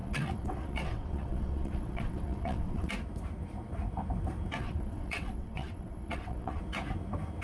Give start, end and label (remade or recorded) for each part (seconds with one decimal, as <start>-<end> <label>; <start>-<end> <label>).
0.0-2.9 remade; 2.9-4.6 recorded; 4.6-6.6 remade; 6.6-7.4 recorded